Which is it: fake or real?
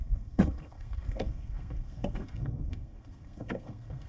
fake